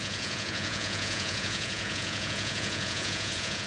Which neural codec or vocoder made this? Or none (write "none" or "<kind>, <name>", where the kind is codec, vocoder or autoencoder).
vocoder, Vocos